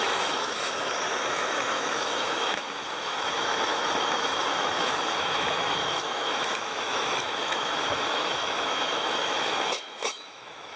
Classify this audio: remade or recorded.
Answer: remade